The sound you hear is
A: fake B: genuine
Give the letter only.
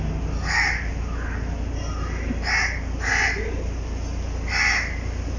B